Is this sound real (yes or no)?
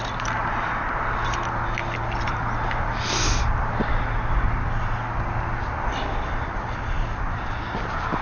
yes